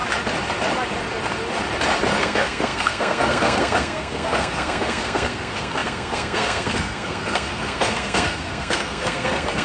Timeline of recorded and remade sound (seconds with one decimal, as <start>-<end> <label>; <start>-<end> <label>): 0.0-2.2 recorded; 2.2-9.6 remade